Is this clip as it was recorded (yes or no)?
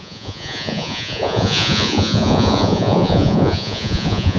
no